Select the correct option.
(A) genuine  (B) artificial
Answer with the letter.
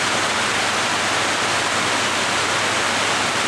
A